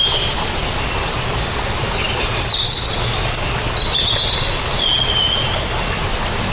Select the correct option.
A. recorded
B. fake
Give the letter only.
A